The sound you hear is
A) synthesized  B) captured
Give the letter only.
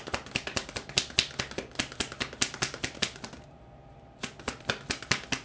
B